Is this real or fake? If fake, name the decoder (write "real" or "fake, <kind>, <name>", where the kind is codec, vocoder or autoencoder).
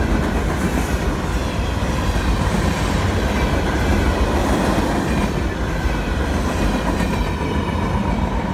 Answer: real